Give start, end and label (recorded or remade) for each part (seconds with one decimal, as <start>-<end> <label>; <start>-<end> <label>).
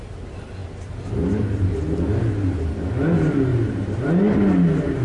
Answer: 0.0-5.0 recorded